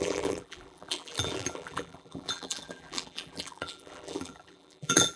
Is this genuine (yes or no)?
no